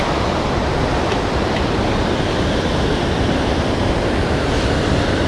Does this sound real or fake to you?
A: real